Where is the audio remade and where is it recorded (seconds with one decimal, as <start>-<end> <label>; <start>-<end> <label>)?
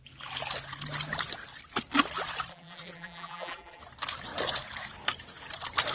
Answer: 0.0-2.5 recorded; 2.5-3.8 remade; 3.8-5.9 recorded